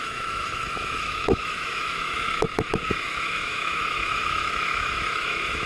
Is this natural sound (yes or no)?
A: no